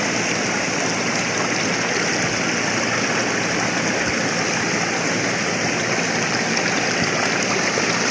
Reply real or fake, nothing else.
real